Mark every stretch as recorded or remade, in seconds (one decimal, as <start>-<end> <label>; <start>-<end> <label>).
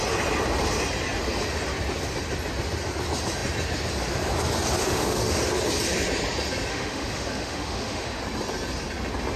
0.0-4.8 recorded; 4.8-5.3 remade; 5.3-6.7 recorded; 6.7-8.2 remade; 8.2-9.4 recorded